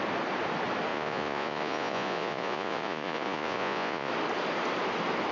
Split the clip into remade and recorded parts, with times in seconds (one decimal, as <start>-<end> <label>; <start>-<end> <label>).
0.0-0.9 recorded; 0.9-4.1 remade; 4.1-5.3 recorded